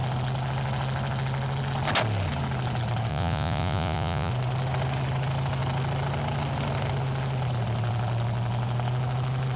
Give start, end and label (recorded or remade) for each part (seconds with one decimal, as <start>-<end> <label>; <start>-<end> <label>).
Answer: 0.0-3.1 recorded; 3.1-4.3 remade; 4.3-9.6 recorded